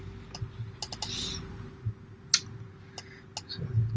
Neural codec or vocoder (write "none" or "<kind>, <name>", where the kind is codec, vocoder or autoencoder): none